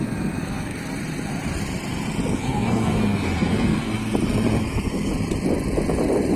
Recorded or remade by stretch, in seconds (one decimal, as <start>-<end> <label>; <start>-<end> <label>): 0.0-0.8 remade; 0.8-2.3 recorded; 2.3-4.0 remade; 4.0-4.6 recorded; 4.6-5.1 remade; 5.1-6.4 recorded